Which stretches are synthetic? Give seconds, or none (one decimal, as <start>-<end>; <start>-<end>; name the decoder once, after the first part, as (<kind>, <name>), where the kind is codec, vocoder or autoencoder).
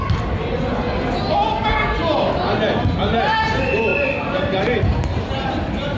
none